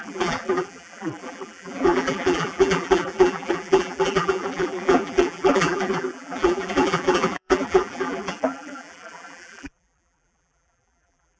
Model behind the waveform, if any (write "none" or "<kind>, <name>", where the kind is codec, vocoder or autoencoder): vocoder, BigVGAN v2